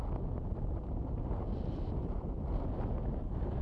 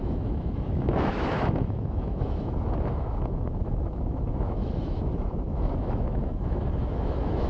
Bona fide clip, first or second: first